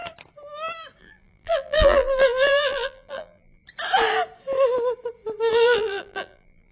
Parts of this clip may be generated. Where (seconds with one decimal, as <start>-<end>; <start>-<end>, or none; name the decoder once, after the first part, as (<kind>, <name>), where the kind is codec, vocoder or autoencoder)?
1.0-3.6 (vocoder, BigVGAN v2); 5.5-6.7